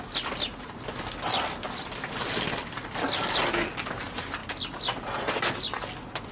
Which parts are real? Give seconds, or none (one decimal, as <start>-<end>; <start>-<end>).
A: 0.0-6.3